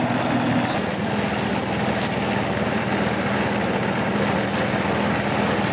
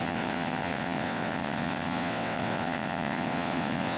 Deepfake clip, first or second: second